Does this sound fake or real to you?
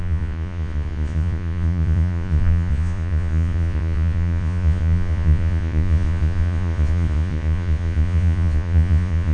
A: fake